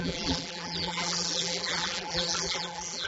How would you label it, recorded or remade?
remade